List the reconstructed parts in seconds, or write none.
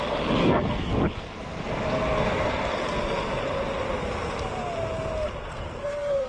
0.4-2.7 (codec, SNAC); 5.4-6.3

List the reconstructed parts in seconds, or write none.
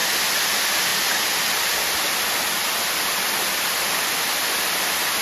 2.6-4.0 (vocoder, BigVGAN v2)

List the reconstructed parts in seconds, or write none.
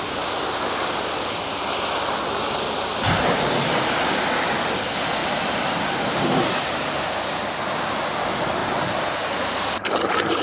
5.2-7.3 (vocoder, BigVGAN v2); 8.6-10.4